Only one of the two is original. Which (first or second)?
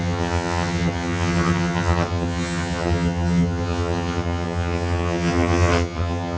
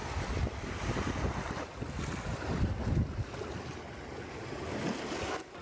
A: second